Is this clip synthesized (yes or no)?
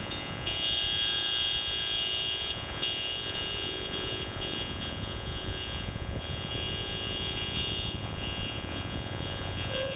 yes